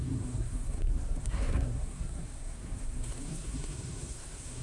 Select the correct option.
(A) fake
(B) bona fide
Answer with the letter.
A